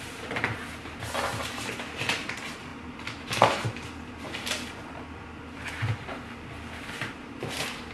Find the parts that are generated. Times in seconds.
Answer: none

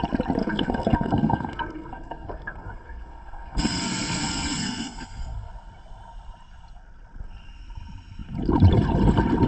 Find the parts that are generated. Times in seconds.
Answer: 0.4-5.5 (codec, SNAC)

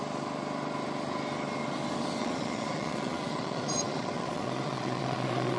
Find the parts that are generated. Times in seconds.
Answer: 2.2-5.6 (vocoder, Vocos)

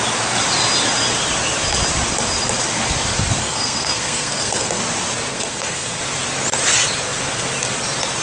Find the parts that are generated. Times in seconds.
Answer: 3.4-4.8 (codec, SNAC); 5.3-6.0

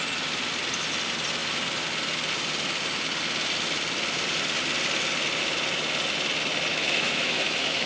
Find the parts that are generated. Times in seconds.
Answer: 6.7-7.9 (autoencoder, DAC-VAE)

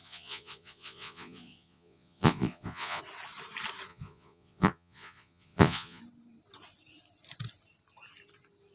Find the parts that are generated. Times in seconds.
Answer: 0.0-3.0 (vocoder, Vocos); 3.9-6.0

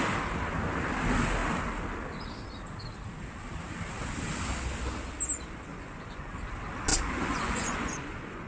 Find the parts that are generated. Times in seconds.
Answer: 5.7-6.3 (vocoder, Vocos); 6.9-8.5